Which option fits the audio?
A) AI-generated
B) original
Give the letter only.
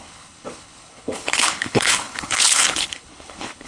A